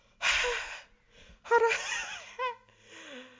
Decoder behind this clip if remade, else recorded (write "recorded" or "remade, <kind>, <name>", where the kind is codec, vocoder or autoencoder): recorded